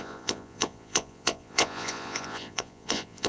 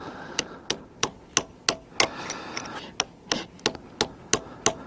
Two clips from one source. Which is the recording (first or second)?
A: second